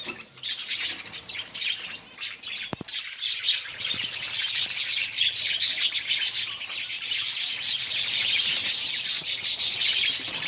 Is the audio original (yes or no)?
no